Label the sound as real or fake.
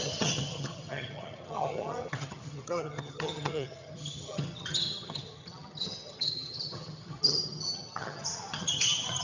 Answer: fake